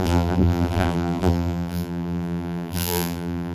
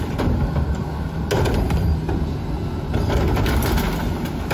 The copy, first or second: first